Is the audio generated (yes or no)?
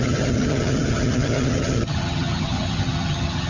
yes